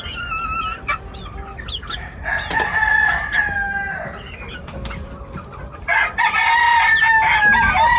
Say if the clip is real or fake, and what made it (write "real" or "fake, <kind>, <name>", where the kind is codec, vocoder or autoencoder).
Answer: real